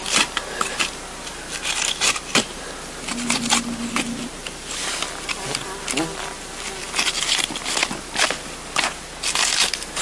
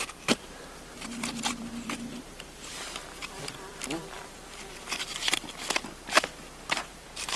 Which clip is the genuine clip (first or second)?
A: first